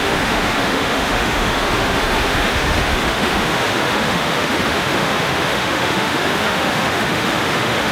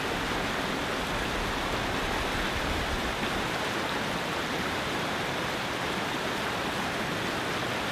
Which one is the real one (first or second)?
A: second